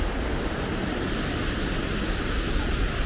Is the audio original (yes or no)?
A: yes